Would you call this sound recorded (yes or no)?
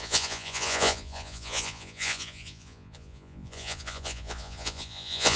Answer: no